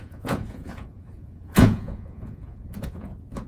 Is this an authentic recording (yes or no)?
no